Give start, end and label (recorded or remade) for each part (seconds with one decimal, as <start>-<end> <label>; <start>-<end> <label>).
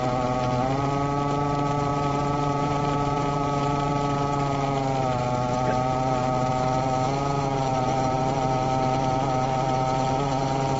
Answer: 0.0-1.9 recorded; 1.9-3.9 remade; 3.9-7.7 recorded; 7.7-8.2 remade; 8.2-10.8 recorded